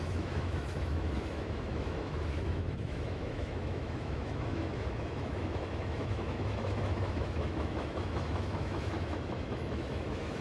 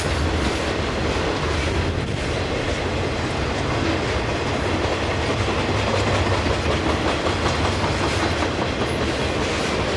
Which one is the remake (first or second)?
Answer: first